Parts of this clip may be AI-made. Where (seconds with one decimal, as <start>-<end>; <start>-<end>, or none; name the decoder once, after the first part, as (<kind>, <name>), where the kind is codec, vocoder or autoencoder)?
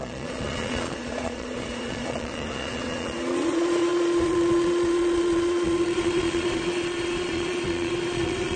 0.0-8.6 (vocoder, Vocos)